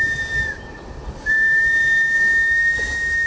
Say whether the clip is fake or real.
real